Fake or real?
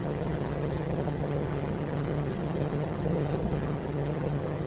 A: fake